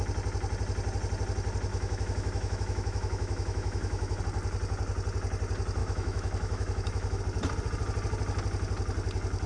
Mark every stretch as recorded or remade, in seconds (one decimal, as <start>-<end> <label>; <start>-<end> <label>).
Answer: 0.0-1.7 recorded; 1.7-4.2 remade; 4.2-5.8 recorded; 5.8-7.2 remade; 7.2-9.5 recorded

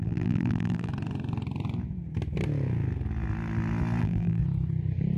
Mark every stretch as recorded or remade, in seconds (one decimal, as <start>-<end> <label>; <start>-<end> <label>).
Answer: 0.0-0.9 remade; 0.9-4.0 recorded; 4.0-4.4 remade; 4.4-5.2 recorded